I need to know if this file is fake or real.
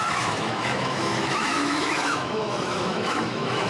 fake